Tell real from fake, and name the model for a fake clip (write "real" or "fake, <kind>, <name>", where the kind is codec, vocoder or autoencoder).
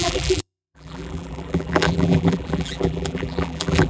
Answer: fake, vocoder, BigVGAN v2